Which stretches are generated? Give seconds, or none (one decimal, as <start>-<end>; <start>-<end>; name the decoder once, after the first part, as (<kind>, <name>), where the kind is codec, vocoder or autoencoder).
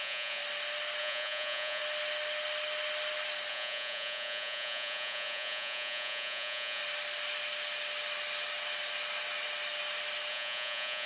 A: 0.0-0.4 (vocoder, Vocos); 1.0-1.8; 3.5-6.8; 10.3-11.1